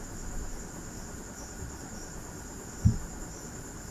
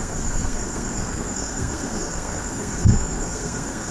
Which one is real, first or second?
first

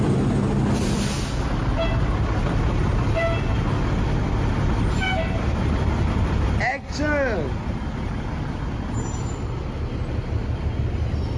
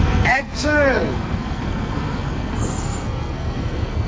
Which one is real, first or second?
first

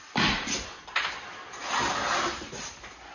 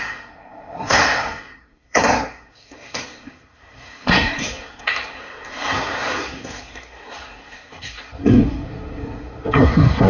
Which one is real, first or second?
first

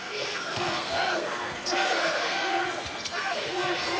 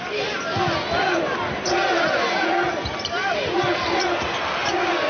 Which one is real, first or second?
second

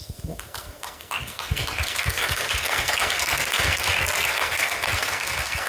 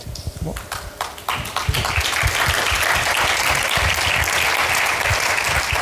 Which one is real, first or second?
second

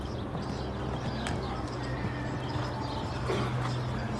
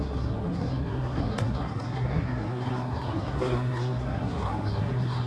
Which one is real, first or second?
first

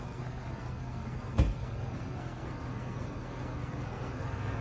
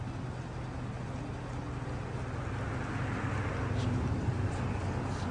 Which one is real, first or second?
second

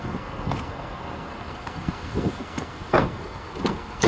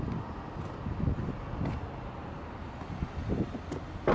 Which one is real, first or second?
second